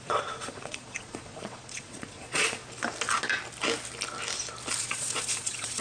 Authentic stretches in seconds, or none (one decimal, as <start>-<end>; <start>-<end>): 2.6-4.8